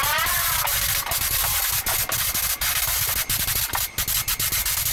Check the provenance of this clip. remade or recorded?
recorded